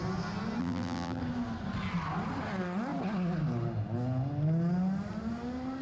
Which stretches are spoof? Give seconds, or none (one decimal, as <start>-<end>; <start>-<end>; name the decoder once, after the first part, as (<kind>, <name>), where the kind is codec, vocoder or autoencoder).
0.6-1.2 (vocoder, BigVGAN v2)